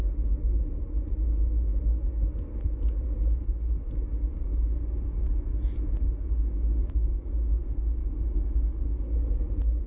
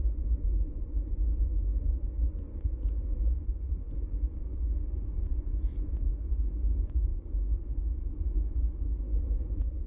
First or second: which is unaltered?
first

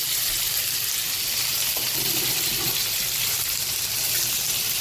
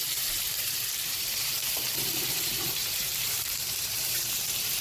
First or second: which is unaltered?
first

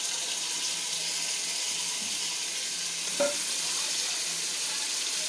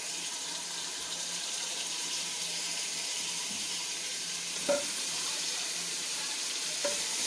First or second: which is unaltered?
first